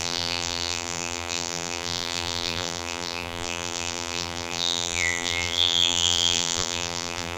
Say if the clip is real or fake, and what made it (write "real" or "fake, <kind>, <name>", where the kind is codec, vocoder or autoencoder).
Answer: fake, vocoder, BigVGAN v2